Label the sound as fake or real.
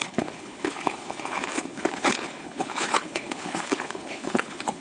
fake